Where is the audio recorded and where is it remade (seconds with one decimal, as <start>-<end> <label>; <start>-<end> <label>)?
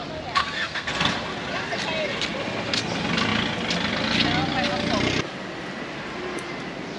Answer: 0.0-0.4 recorded; 0.4-0.9 remade; 0.9-7.0 recorded